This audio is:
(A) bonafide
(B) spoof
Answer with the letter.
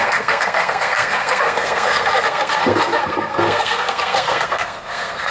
B